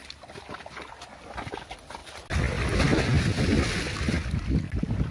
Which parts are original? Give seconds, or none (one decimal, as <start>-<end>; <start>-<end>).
0.0-5.1